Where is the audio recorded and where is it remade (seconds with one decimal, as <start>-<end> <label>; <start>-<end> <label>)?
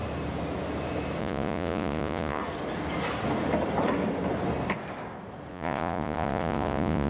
0.0-1.2 recorded; 1.2-2.4 remade; 2.4-5.5 recorded; 5.5-7.1 remade